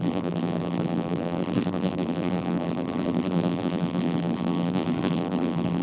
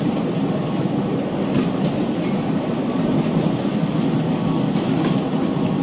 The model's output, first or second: first